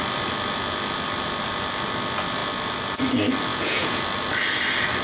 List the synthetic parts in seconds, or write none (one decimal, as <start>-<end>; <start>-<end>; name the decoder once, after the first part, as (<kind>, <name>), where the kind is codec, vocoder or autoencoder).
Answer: 3.5-4.0 (vocoder, Vocos)